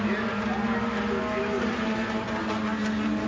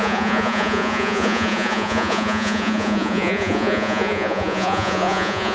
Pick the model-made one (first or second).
second